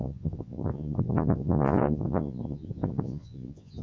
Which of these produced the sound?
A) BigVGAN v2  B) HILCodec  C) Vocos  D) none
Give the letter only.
C